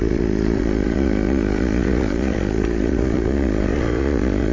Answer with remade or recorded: remade